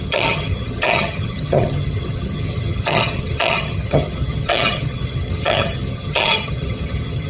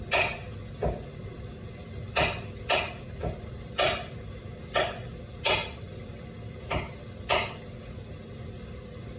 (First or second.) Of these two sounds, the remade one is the first